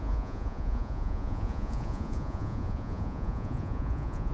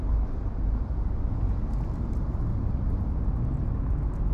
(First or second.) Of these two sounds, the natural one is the second